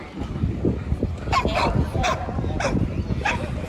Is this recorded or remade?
recorded